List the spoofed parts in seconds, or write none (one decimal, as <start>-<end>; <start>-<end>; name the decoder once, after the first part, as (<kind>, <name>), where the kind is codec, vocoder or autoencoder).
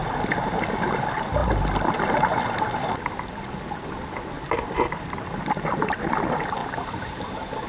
none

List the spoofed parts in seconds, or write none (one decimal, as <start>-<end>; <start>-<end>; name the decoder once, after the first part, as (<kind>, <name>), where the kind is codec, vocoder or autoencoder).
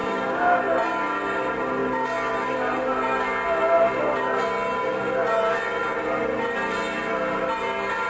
0.0-0.6 (codec, DAC)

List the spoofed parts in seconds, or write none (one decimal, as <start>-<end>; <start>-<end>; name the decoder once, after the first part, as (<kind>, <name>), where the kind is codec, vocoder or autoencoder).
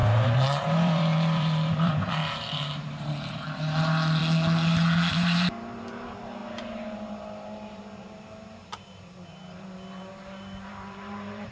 0.0-4.2 (vocoder, BigVGAN v2); 5.1-11.5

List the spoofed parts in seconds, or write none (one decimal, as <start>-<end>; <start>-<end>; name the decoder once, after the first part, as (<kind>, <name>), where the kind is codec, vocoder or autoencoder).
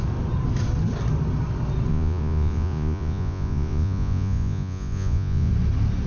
1.9-5.5 (vocoder, Vocos)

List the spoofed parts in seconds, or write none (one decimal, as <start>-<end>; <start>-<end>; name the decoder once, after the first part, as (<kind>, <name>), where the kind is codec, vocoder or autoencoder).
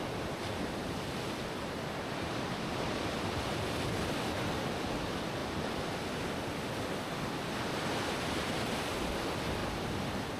none